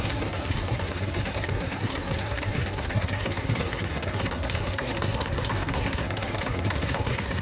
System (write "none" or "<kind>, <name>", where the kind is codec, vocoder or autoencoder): codec, SNAC